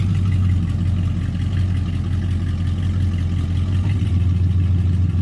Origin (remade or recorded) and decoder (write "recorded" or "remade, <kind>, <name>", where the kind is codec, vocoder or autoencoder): recorded